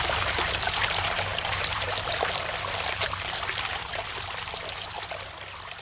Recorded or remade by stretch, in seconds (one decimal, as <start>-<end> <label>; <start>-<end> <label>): 0.0-5.8 remade